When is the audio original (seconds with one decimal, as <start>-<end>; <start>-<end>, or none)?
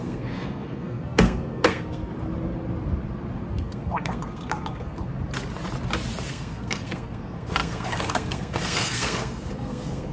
2.1-3.5; 5.1-6.3